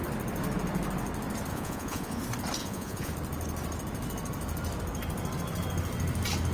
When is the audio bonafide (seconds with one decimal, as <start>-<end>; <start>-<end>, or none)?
0.0-1.5; 2.2-2.6; 3.1-6.5